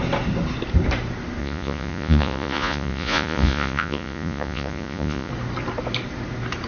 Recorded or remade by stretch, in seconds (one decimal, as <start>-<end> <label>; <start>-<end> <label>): 0.0-1.4 recorded; 1.4-5.3 remade; 5.3-6.7 recorded